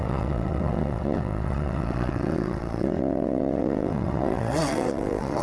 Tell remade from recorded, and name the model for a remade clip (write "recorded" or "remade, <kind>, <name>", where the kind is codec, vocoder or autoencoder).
remade, vocoder, WaveNeXt